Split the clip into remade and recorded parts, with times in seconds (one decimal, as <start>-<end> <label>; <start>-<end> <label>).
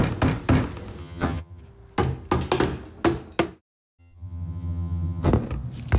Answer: 0.0-1.0 recorded; 1.0-1.6 remade; 1.6-4.0 recorded; 4.0-5.3 remade; 5.3-6.0 recorded